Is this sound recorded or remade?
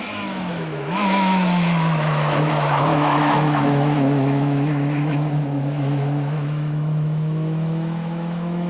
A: remade